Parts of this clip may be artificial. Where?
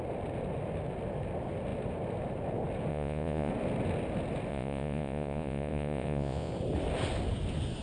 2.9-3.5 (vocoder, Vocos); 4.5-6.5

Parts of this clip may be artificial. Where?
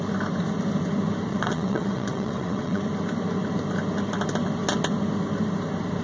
1.3-2.8 (vocoder, WaveNeXt)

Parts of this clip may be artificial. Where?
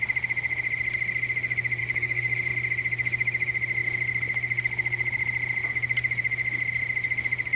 1.8-2.5 (codec, DAC)